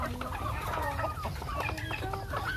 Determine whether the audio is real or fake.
real